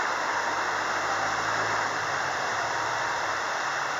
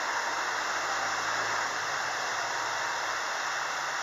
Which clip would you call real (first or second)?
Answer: second